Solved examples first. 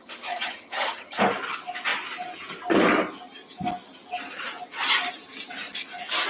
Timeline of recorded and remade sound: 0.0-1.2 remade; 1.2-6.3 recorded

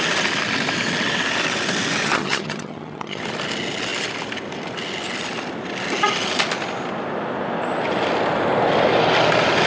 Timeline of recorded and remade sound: 0.0-2.0 recorded; 2.0-3.2 remade; 3.2-9.7 recorded

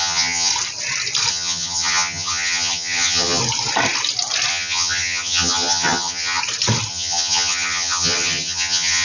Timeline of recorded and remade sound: 0.0-0.5 remade; 0.5-1.3 recorded; 1.3-3.4 remade; 3.4-4.5 recorded; 4.5-6.4 remade; 6.4-6.9 recorded; 6.9-9.0 remade

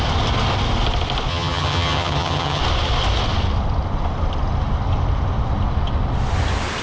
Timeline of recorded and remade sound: 0.0-1.3 recorded; 1.3-2.6 remade; 2.6-6.8 recorded